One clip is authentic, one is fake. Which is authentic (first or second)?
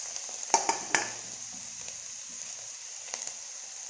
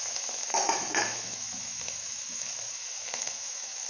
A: first